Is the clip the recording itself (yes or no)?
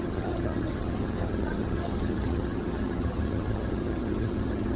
no